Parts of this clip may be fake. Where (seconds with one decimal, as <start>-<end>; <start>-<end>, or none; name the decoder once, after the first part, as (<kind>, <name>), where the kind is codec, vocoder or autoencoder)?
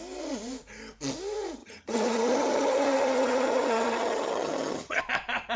1.6-5.0 (vocoder, HiFi-GAN)